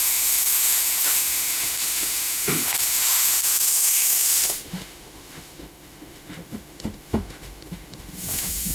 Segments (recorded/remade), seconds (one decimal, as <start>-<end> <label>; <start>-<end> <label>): 0.0-8.7 remade